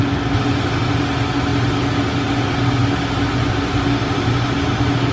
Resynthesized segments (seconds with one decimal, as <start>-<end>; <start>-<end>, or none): none

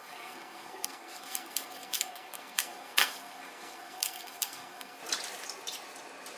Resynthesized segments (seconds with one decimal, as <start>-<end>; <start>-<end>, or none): 0.0-5.0

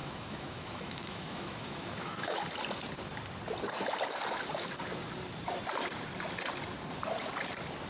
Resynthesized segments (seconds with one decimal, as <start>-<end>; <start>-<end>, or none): 0.0-2.4